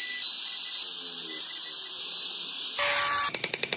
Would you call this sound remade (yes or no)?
no